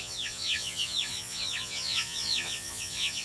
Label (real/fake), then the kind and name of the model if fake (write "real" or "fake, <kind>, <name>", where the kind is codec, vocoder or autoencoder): fake, vocoder, Vocos